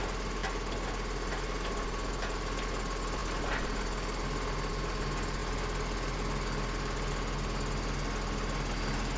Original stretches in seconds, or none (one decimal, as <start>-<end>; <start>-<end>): 0.0-9.2